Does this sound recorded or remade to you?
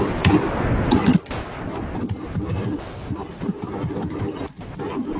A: recorded